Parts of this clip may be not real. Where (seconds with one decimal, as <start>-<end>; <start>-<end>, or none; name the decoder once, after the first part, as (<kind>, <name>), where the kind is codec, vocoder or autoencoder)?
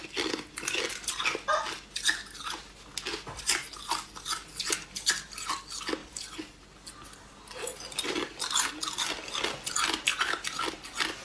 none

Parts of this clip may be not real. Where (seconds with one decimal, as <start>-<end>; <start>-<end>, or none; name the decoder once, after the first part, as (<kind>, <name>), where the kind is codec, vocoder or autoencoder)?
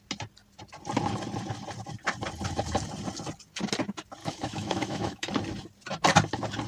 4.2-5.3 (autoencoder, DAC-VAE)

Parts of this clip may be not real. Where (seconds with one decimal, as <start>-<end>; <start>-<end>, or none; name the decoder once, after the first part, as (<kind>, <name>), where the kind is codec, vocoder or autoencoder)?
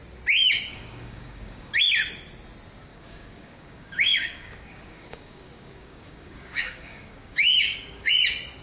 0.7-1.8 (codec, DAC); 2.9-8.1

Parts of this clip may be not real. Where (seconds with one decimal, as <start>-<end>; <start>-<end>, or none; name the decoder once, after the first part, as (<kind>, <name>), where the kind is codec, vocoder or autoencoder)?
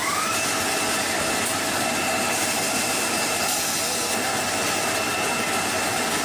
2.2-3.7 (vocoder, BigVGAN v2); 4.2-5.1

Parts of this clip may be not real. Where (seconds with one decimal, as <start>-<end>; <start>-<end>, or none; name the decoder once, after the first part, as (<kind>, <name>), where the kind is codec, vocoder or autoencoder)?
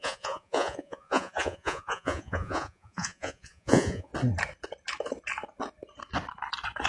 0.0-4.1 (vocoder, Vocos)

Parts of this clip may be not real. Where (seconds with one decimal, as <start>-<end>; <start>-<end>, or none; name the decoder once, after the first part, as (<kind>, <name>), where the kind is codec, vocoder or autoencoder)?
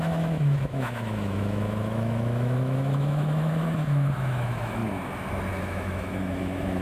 0.0-4.8 (autoencoder, DAC-VAE); 5.5-6.8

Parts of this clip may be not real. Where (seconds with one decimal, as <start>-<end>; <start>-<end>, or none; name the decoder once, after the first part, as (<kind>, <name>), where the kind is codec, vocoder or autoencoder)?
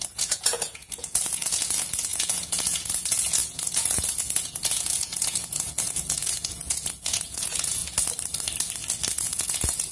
0.0-7.8 (vocoder, Vocos); 9.1-9.9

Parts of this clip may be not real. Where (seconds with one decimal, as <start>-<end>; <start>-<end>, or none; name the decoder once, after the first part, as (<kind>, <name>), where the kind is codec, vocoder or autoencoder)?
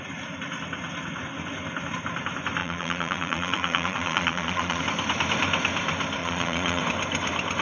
2.6-4.8 (vocoder, Vocos); 6.2-6.8